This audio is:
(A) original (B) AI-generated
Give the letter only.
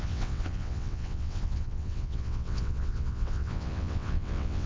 B